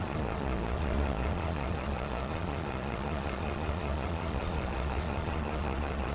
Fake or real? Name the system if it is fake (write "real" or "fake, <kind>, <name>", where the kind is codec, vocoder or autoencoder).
fake, vocoder, Vocos